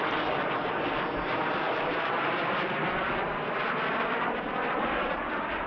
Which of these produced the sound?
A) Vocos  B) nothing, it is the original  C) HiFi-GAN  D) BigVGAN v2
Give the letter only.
D